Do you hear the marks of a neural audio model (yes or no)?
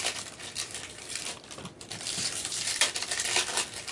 no